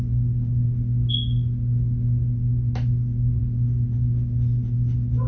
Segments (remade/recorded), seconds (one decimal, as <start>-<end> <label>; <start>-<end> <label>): 0.0-5.3 recorded